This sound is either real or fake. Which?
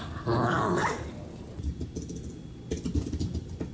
real